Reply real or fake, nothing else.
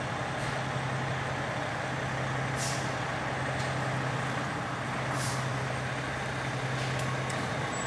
real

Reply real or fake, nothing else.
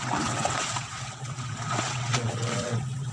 fake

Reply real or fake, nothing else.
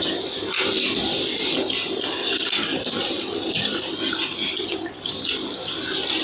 real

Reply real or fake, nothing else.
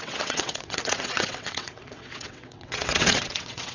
fake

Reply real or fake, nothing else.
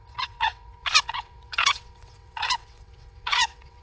fake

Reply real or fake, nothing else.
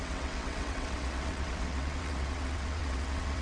fake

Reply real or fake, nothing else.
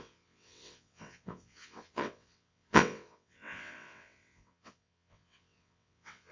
fake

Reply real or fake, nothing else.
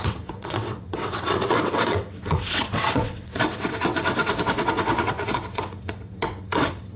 fake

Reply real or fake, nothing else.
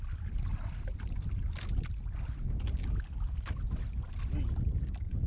real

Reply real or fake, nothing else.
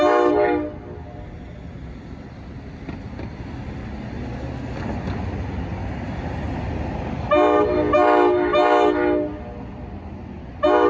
real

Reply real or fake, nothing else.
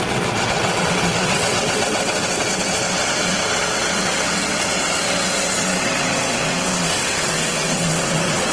fake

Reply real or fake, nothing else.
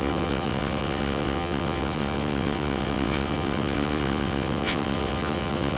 fake